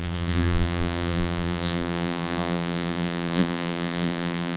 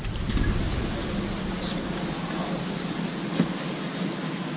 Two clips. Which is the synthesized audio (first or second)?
first